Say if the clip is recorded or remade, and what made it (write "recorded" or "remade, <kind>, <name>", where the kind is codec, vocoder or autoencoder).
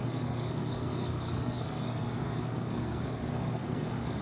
remade, codec, SNAC